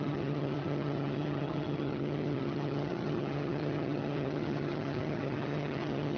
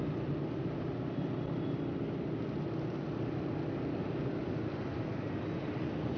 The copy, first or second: first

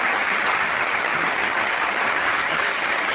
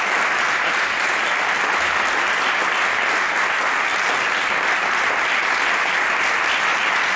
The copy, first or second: first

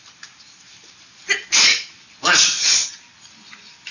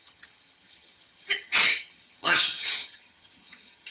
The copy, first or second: second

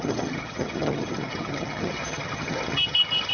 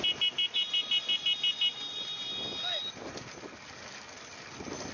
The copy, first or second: first